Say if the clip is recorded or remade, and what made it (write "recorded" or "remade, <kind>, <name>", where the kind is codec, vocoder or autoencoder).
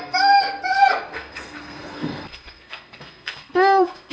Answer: remade, codec, SNAC